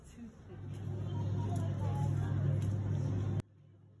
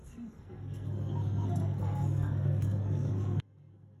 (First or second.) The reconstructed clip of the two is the second